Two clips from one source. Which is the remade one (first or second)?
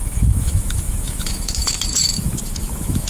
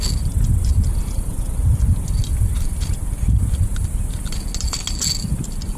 first